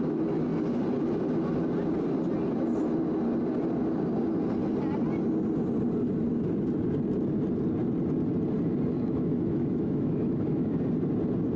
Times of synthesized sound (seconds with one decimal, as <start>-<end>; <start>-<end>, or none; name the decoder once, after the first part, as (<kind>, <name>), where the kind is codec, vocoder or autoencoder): 8.9-10.7 (autoencoder, DAC-VAE)